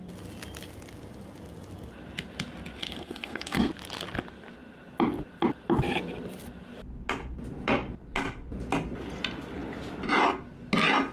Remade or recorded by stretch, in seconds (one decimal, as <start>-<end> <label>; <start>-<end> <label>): 0.0-2.8 recorded; 2.8-3.7 remade; 3.7-11.1 recorded